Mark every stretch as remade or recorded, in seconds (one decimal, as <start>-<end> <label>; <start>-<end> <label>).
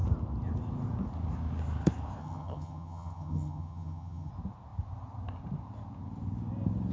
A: 0.0-2.2 recorded; 2.2-4.3 remade; 4.3-6.9 recorded